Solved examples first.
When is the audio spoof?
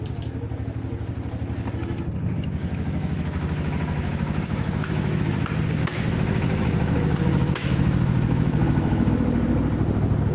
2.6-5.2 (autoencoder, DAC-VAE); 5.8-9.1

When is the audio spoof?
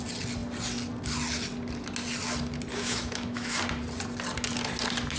2.7-3.6 (autoencoder, DAC-VAE)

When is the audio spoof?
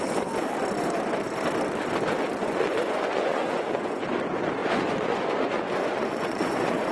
2.4-4.0 (vocoder, Vocos); 4.6-6.9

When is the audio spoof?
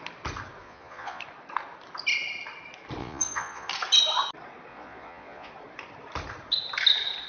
0.6-1.2 (vocoder, Vocos); 3.0-3.7; 4.7-5.5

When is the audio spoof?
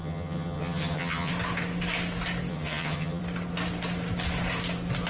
0.0-1.3 (vocoder, HiFi-GAN); 2.5-3.2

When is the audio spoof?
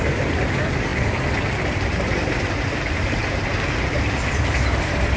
none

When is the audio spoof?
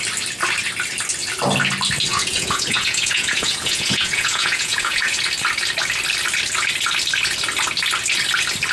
2.1-5.2 (vocoder, Vocos)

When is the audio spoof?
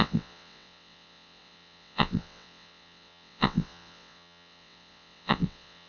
0.0-5.9 (vocoder, WaveNeXt)